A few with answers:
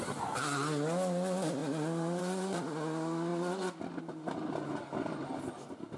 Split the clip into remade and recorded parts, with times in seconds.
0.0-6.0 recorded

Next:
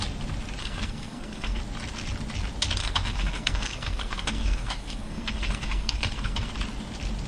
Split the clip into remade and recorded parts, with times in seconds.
0.0-0.6 recorded; 0.6-1.6 remade; 1.6-2.8 recorded; 2.8-6.5 remade; 6.5-7.3 recorded

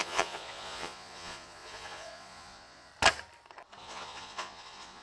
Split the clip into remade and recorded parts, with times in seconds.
0.0-2.9 remade; 2.9-3.8 recorded; 3.8-5.0 remade

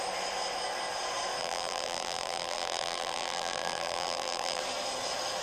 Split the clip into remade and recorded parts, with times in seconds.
0.0-1.4 recorded; 1.4-4.6 remade; 4.6-5.4 recorded

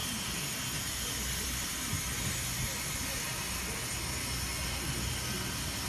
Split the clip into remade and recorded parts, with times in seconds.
0.0-5.9 recorded